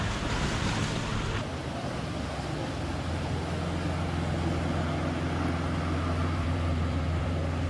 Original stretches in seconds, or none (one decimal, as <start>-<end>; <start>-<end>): 0.0-1.1; 2.3-6.2; 7.3-7.7